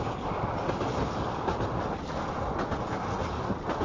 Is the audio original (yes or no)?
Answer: yes